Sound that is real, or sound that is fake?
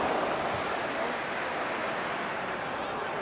real